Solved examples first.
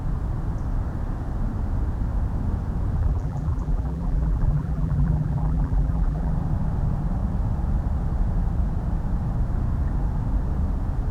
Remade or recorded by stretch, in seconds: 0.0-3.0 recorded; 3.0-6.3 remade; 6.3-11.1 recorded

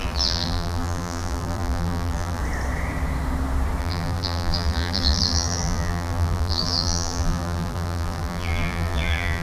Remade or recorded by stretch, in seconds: 0.0-2.4 remade; 2.4-3.8 recorded; 3.8-9.4 remade

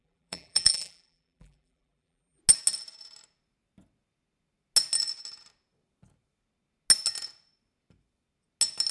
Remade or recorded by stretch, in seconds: 0.0-2.4 remade; 2.4-8.9 recorded